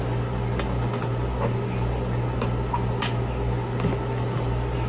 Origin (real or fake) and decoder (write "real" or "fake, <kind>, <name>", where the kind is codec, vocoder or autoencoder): real